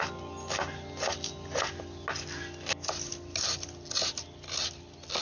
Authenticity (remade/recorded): recorded